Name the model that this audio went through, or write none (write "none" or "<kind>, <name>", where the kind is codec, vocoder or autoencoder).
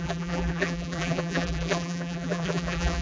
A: vocoder, BigVGAN v2